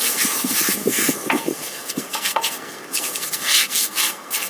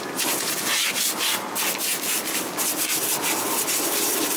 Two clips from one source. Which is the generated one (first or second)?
first